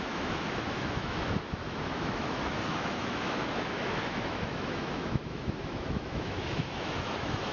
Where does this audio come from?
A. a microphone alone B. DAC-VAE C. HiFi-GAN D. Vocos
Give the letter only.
B